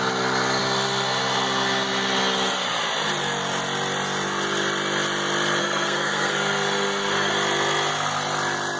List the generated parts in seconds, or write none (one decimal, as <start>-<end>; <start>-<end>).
5.6-7.3